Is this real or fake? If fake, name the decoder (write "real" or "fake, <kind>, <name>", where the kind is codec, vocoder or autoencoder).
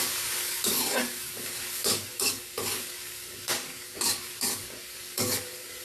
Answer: fake, codec, DAC